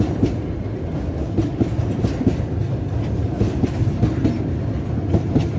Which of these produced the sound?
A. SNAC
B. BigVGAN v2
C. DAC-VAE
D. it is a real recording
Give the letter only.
D